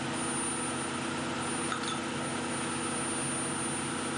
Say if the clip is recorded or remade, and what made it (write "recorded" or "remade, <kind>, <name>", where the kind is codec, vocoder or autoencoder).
recorded